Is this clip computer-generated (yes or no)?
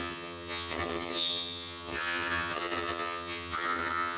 yes